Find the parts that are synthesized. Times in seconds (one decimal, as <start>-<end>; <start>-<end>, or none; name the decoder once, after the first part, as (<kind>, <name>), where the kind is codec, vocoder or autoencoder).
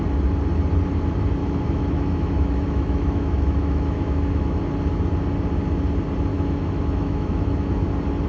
1.4-4.6 (autoencoder, DAC-VAE); 6.3-7.9